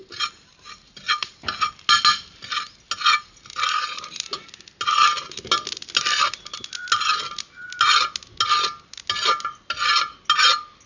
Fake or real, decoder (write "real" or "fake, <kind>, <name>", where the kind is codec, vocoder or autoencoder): real